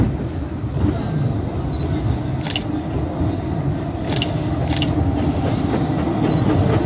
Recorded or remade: recorded